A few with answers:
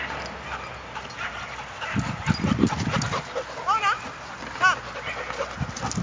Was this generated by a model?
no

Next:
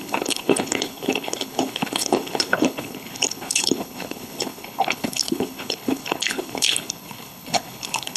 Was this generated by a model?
yes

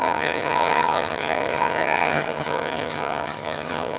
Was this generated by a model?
yes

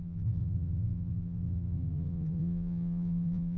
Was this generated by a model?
yes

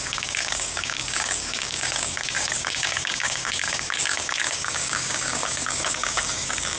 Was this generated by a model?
yes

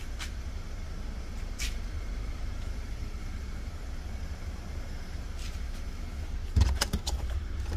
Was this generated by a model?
yes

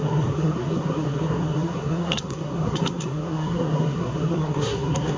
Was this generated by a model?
yes